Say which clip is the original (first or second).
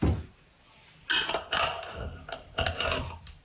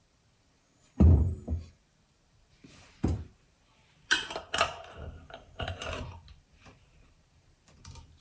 first